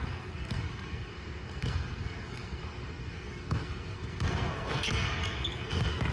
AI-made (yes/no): yes